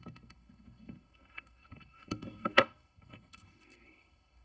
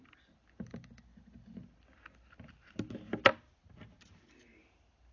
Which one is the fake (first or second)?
first